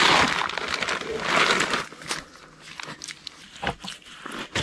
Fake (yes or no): no